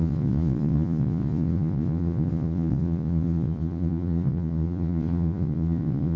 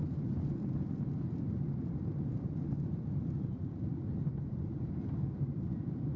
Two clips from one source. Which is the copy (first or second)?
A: first